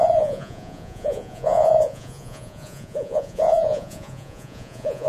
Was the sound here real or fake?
fake